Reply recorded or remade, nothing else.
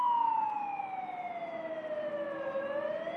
recorded